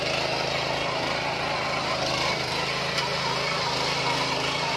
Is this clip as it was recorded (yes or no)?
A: yes